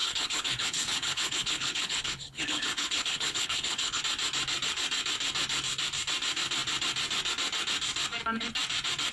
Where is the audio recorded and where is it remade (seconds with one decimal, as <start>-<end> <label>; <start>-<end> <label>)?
0.0-4.0 remade; 4.0-9.1 recorded